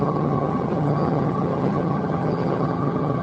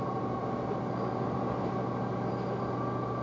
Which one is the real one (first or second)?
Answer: second